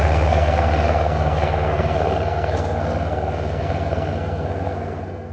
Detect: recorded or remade remade